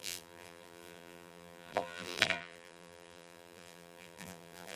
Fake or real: fake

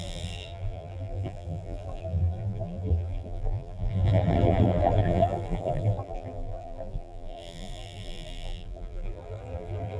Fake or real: fake